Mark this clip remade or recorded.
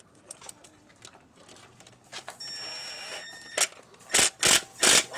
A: recorded